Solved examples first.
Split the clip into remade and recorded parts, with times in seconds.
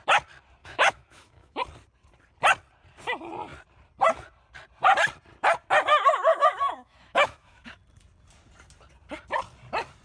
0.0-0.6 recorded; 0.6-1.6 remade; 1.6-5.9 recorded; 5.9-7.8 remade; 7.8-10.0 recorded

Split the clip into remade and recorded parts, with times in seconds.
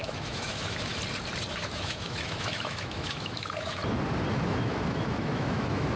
0.0-0.9 remade; 0.9-1.5 recorded; 1.5-3.8 remade; 3.8-4.3 recorded; 4.3-6.0 remade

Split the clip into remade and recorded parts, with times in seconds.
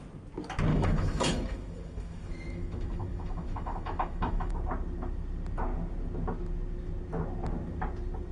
0.0-0.7 recorded; 0.7-4.5 remade; 4.5-8.3 recorded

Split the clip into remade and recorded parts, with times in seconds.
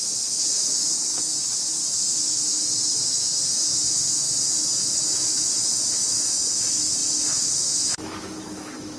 0.0-9.0 remade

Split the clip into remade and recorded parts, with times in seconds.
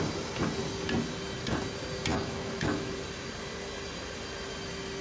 0.0-2.1 recorded; 2.1-2.9 remade; 2.9-5.0 recorded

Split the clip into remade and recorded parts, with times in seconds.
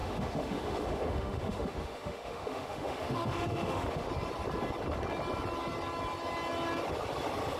0.0-4.1 remade; 4.1-7.6 recorded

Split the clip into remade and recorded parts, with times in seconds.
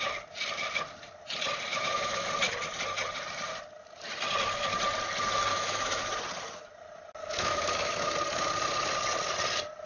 0.0-1.7 recorded; 1.7-2.3 remade; 2.3-5.5 recorded; 5.5-6.0 remade; 6.0-7.2 recorded; 7.2-8.1 remade; 8.1-9.9 recorded